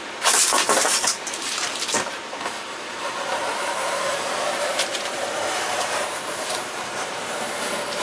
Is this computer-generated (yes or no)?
yes